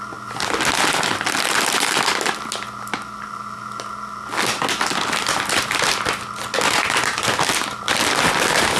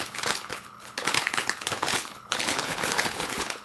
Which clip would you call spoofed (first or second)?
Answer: second